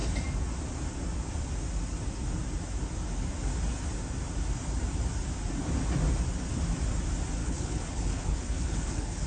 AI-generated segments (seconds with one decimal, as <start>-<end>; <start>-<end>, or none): 7.4-9.3